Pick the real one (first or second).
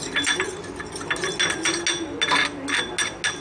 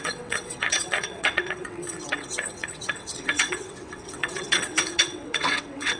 first